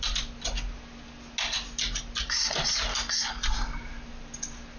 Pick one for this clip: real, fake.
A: real